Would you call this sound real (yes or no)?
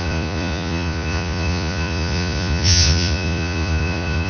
no